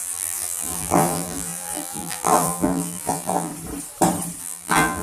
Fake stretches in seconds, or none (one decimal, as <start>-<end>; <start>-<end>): 0.0-3.5; 4.4-5.0